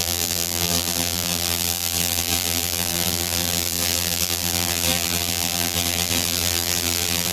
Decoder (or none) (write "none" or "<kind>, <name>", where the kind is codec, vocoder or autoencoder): vocoder, BigVGAN v2